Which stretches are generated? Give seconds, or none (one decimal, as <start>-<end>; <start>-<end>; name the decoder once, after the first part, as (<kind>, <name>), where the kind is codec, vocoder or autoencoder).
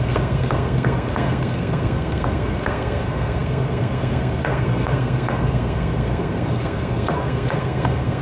0.0-8.2 (codec, SNAC)